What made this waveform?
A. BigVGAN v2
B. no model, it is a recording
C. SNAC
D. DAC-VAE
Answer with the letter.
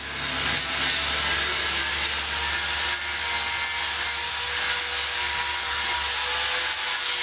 B